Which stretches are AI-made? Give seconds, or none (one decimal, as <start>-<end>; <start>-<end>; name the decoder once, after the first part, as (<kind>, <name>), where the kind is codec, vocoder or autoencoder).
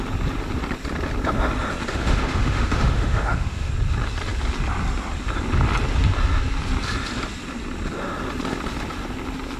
1.9-3.7 (autoencoder, DAC-VAE)